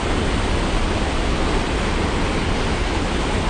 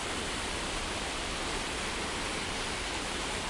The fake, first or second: second